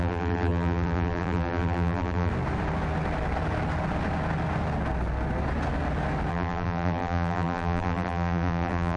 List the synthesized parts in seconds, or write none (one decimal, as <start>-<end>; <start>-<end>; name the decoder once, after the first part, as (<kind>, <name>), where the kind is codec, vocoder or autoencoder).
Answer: 0.0-2.3 (vocoder, BigVGAN v2); 6.3-9.0